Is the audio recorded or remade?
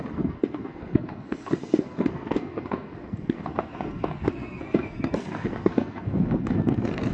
remade